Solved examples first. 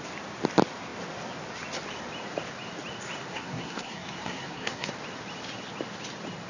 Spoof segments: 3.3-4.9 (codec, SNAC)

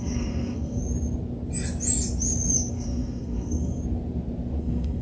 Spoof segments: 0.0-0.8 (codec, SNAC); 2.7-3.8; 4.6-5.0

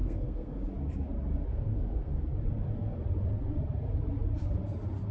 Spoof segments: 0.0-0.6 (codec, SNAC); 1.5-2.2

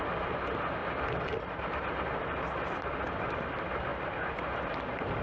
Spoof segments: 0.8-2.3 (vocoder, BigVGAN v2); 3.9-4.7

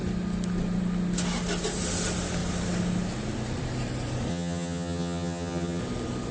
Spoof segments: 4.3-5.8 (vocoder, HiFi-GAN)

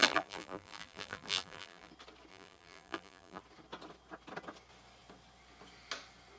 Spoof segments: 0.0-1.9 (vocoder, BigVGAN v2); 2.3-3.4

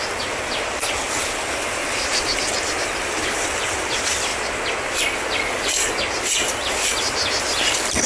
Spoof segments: none

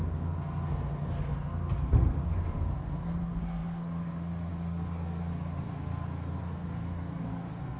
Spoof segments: 0.0-7.8 (codec, SNAC)